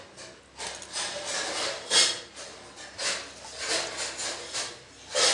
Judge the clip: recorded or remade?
recorded